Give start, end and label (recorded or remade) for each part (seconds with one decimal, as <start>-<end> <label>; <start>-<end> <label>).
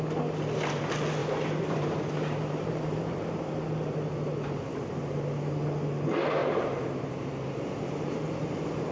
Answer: 0.0-1.2 recorded; 1.2-3.5 remade; 3.5-6.4 recorded; 6.4-8.9 remade